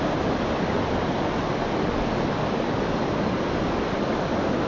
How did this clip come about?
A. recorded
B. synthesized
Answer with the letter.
A